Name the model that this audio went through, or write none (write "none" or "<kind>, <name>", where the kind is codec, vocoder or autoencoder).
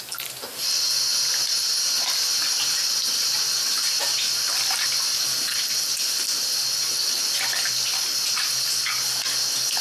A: none